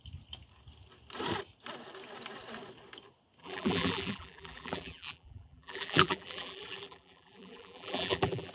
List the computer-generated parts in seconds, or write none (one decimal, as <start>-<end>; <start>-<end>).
3.4-8.5

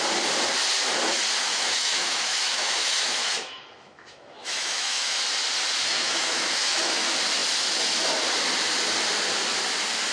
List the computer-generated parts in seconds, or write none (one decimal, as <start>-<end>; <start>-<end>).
1.5-5.2; 5.9-7.0

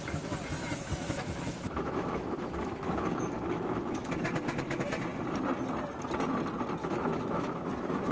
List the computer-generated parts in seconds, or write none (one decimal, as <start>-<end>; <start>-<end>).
0.6-4.1; 6.8-8.1

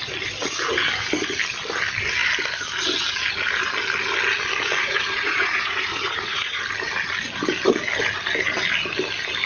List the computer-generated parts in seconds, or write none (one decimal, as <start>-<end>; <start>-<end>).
4.8-6.6

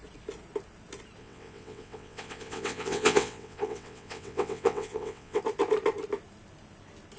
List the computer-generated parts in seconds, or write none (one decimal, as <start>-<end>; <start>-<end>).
1.2-5.4

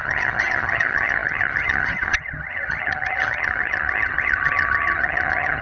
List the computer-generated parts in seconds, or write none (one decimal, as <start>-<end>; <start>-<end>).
0.0-5.6

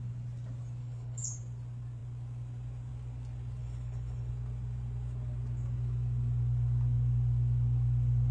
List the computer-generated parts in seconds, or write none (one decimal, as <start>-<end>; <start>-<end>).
0.8-1.4; 3.6-4.3